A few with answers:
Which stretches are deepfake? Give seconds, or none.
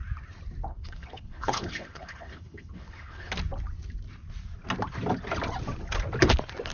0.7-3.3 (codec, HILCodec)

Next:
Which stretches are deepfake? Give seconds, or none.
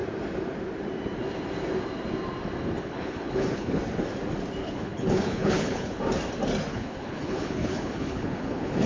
2.8-3.8 (codec, HILCodec); 4.6-6.0; 6.7-8.9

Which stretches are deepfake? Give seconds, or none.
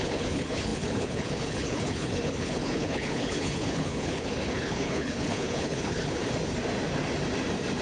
0.0-6.2 (codec, HILCodec)